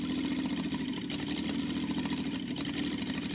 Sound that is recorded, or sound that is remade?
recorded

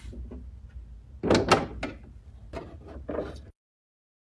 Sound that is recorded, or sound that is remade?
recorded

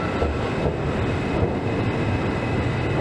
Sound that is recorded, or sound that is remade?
recorded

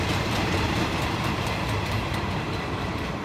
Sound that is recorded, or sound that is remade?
remade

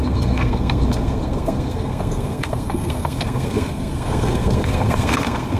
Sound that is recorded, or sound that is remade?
remade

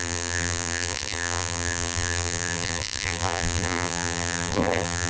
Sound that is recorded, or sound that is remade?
remade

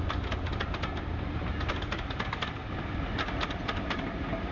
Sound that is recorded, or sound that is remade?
recorded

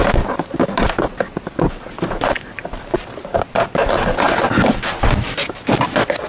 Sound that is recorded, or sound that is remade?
recorded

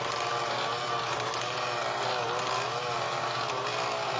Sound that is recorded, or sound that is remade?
recorded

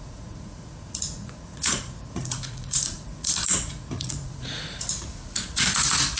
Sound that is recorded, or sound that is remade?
remade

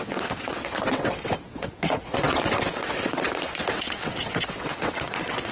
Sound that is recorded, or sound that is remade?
remade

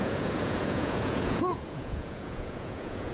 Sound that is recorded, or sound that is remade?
remade